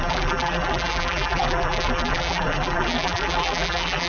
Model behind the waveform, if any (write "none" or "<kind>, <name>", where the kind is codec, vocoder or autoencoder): vocoder, BigVGAN v2